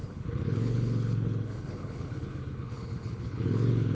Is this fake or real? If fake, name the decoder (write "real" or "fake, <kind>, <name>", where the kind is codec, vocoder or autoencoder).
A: fake, codec, HILCodec